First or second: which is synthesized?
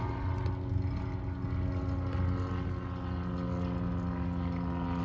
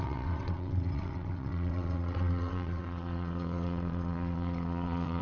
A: second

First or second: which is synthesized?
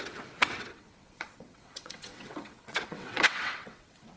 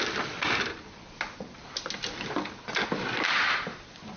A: first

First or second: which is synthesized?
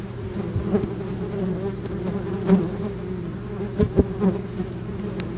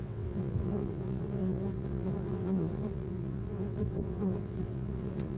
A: second